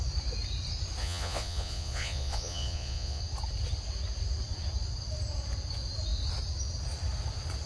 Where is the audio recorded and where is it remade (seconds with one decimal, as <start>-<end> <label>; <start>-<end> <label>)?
0.0-1.0 recorded; 1.0-3.2 remade; 3.2-7.7 recorded